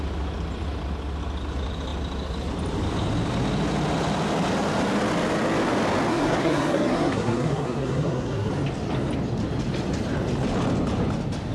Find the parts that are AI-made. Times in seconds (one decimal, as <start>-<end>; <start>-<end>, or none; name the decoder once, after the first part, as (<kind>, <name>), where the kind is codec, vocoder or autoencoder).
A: 6.1-8.5 (codec, SNAC)